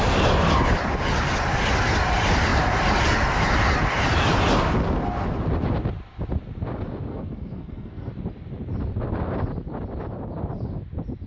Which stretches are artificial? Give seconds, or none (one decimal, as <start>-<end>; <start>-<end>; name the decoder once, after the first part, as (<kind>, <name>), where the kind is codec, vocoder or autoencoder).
7.1-8.1 (codec, SNAC)